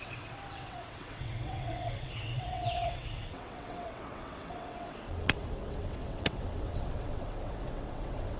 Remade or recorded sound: remade